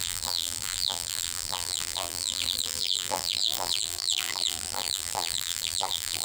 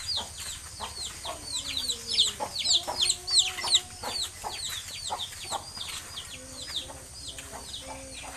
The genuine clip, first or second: second